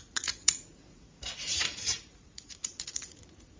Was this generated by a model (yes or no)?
yes